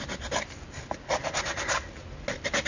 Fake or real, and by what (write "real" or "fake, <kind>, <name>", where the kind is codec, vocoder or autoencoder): real